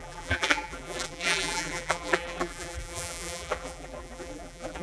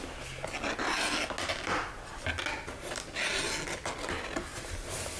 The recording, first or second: second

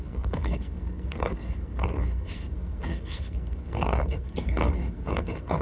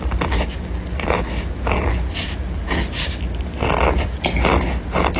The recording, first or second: second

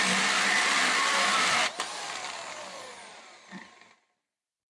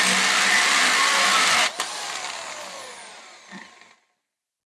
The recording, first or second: second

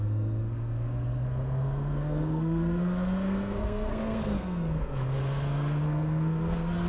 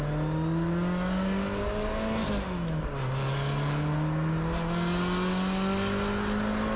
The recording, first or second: second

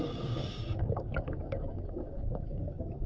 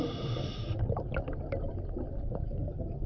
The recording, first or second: second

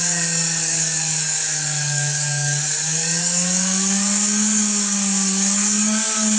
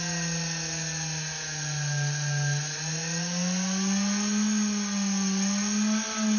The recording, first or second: second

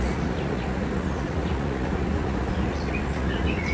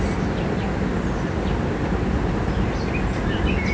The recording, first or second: second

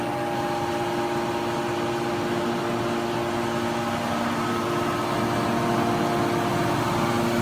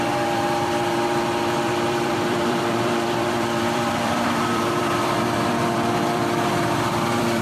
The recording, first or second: first